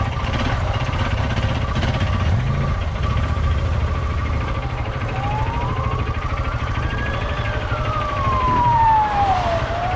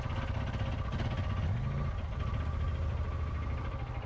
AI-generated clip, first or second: first